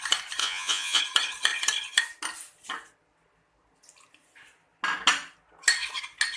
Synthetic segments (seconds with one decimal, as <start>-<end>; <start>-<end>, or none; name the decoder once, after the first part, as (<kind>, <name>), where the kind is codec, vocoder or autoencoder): 0.4-1.0 (vocoder, Vocos)